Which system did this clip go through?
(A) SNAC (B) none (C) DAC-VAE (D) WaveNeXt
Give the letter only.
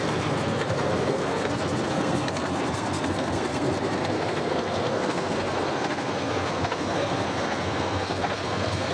A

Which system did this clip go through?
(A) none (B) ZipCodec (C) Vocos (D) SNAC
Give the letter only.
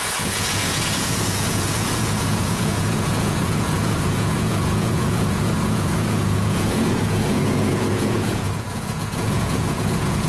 C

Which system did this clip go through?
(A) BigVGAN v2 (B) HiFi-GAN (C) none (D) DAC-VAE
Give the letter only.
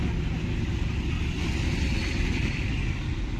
C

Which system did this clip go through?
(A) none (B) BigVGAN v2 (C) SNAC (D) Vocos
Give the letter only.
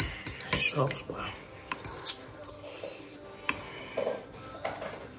A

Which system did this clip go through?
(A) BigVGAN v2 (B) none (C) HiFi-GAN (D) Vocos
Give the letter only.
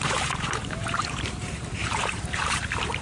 A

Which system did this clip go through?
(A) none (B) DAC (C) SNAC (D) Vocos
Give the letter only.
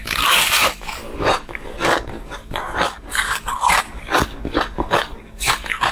B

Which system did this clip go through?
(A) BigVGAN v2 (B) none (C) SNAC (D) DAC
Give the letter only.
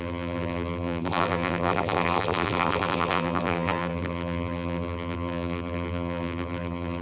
A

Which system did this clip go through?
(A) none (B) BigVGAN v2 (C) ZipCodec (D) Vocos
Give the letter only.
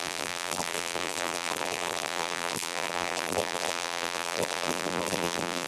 B